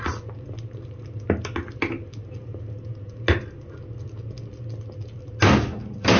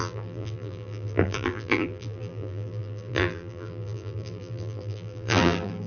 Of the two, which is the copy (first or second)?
second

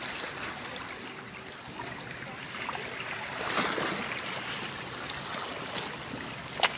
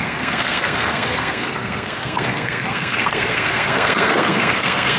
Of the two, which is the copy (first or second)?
second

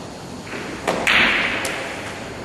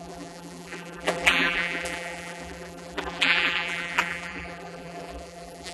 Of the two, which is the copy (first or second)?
second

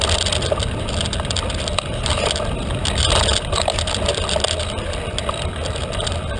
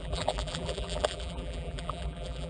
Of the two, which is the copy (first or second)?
second